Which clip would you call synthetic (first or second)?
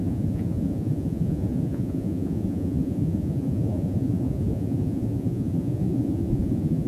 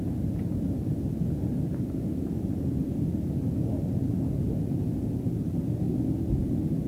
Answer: first